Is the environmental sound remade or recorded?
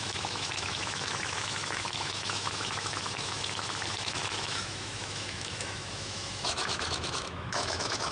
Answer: remade